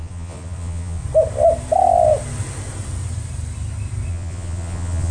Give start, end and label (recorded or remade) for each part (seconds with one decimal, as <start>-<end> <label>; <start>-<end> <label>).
0.0-1.0 remade; 1.0-4.1 recorded; 4.1-5.1 remade